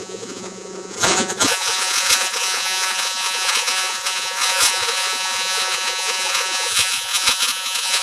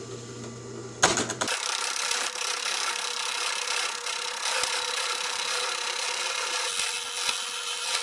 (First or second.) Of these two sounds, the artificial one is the first